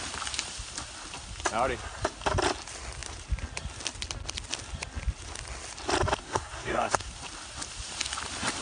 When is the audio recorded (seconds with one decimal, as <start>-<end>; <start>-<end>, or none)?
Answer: 0.0-6.2; 7.1-8.6